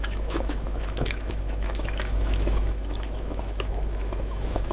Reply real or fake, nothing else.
fake